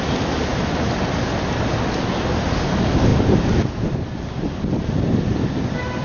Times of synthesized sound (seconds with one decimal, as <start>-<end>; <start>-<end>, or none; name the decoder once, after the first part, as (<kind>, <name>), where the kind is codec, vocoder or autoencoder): none